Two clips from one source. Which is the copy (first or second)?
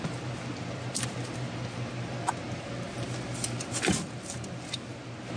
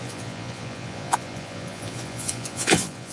second